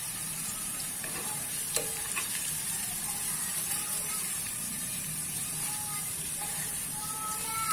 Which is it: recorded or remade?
remade